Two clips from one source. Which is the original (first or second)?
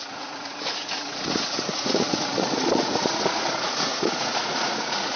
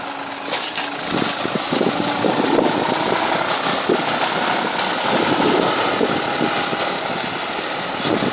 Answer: second